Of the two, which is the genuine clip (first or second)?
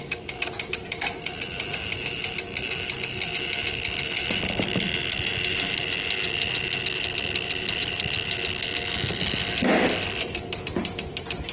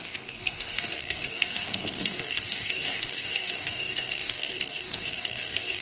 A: first